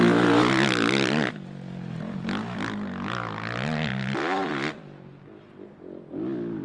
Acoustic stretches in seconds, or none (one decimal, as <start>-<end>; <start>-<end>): 0.0-6.6